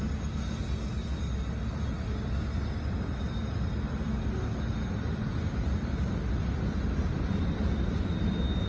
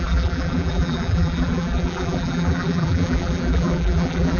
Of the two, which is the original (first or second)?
first